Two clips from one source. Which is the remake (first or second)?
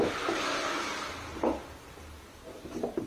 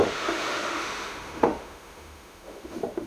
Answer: second